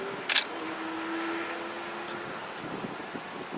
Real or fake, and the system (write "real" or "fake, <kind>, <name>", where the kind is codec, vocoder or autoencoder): real